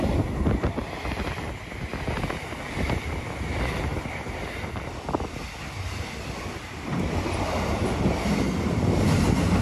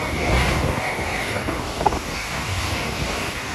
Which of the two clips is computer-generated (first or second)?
second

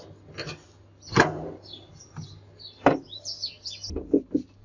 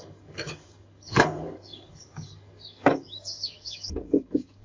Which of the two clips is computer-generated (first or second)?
second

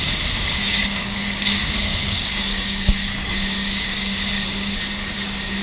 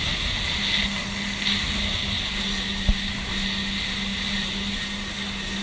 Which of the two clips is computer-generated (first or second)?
first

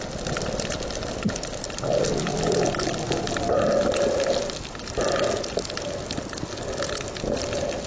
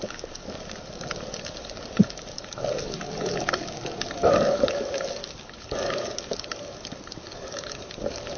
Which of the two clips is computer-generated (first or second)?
second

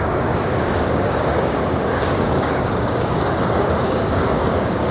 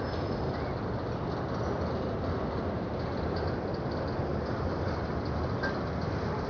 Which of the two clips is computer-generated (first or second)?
first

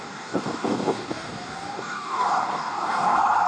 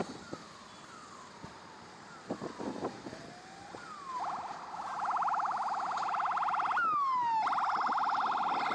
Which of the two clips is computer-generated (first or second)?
first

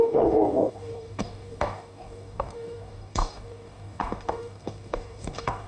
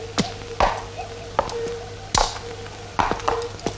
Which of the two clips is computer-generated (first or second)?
first